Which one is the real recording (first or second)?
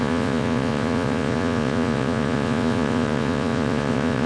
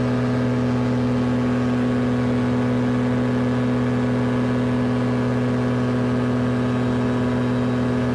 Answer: second